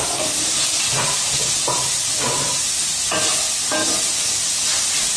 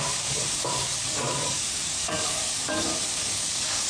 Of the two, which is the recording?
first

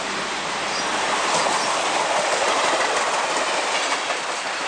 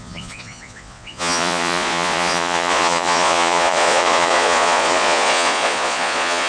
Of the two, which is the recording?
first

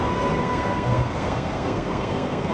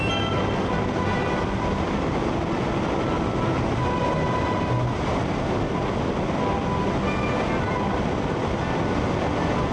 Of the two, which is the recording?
second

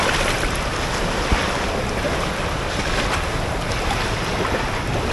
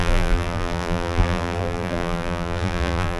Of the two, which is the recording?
first